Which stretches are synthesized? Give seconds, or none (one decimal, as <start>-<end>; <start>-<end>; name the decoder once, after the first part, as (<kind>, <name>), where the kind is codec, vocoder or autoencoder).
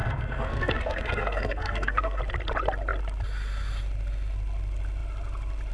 0.0-2.2 (codec, SNAC)